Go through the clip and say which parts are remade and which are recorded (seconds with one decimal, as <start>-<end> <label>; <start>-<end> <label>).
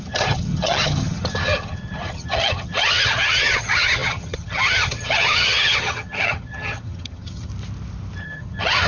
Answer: 0.0-7.5 remade; 7.5-8.2 recorded; 8.2-8.9 remade